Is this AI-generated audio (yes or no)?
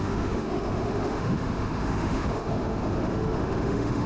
yes